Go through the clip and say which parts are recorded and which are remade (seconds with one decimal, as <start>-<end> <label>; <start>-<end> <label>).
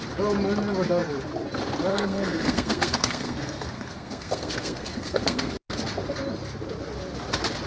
0.0-1.9 recorded; 1.9-5.5 remade; 5.5-7.7 recorded